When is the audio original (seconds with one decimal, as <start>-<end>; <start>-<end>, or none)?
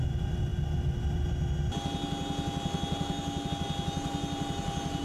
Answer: 0.0-5.0